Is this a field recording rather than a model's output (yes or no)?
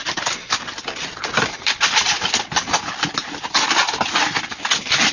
yes